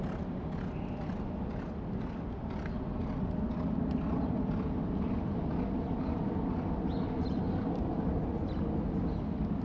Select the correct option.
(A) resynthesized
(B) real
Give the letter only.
B